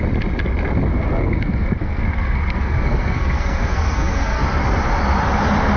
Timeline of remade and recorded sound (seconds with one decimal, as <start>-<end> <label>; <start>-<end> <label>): 0.0-0.9 recorded; 0.9-4.4 remade; 4.4-5.8 recorded